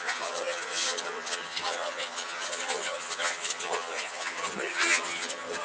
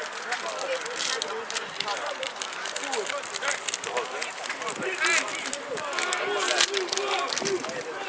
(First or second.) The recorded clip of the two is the second